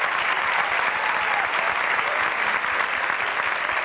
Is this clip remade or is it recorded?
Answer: recorded